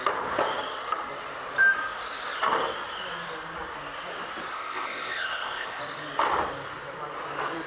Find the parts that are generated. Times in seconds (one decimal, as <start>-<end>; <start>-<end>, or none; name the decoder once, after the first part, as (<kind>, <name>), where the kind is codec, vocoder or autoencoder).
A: 4.5-5.8 (codec, ZipCodec)